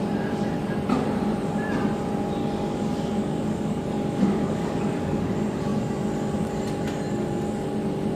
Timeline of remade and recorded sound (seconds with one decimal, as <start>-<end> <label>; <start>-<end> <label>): 0.0-2.4 recorded; 2.4-5.3 remade; 5.3-8.1 recorded